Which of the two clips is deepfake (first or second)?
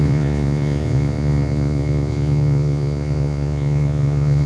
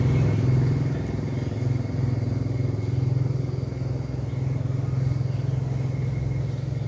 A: first